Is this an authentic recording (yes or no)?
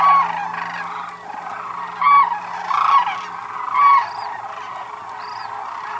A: yes